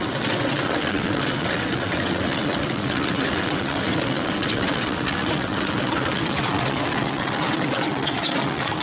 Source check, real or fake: fake